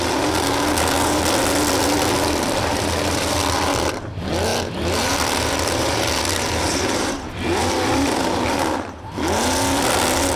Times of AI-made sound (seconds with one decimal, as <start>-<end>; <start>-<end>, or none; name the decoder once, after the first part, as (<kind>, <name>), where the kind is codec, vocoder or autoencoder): none